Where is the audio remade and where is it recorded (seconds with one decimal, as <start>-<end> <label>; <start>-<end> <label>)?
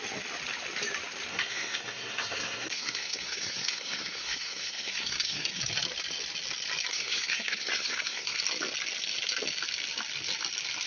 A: 0.0-1.3 recorded; 1.3-5.6 remade; 5.6-6.9 recorded; 6.9-8.4 remade; 8.4-10.9 recorded